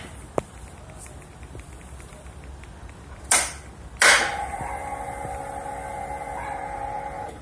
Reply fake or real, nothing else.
real